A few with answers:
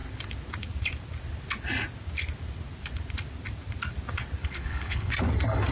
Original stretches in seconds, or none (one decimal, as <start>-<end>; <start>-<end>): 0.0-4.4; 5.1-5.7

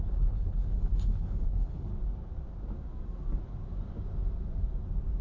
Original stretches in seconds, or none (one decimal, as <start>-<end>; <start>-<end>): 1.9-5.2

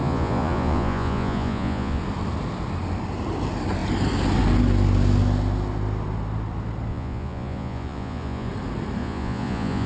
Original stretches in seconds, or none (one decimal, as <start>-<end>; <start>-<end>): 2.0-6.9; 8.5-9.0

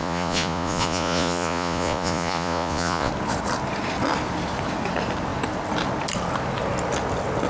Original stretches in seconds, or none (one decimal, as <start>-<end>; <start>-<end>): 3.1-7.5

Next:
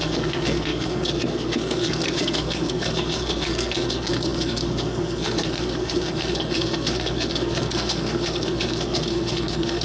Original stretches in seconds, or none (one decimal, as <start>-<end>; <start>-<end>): none

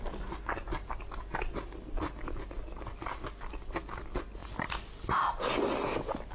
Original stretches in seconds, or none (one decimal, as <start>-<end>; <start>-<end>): 0.0-6.3

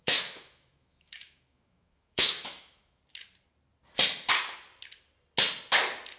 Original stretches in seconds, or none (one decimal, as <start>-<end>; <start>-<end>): 3.0-6.2